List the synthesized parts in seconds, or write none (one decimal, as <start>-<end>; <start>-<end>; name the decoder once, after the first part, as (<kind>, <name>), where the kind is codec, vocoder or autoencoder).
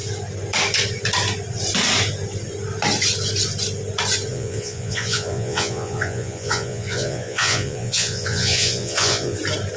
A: 4.3-9.4 (vocoder, Vocos)